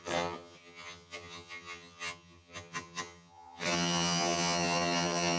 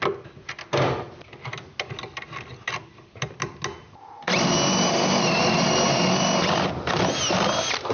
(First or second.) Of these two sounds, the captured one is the second